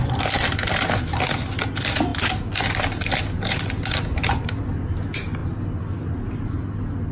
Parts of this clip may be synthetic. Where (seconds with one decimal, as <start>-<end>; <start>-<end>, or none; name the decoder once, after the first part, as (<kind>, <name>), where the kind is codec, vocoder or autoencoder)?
2.1-3.2 (vocoder, BigVGAN v2)